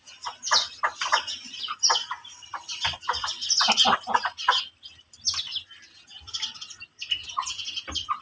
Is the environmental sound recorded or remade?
recorded